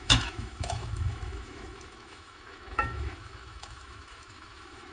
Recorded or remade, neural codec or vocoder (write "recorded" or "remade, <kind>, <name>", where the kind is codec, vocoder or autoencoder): remade, autoencoder, DAC-VAE